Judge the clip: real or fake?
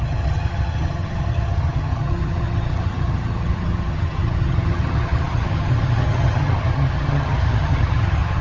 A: fake